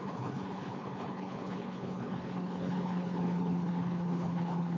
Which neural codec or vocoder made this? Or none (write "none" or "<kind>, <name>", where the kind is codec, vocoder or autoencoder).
codec, HILCodec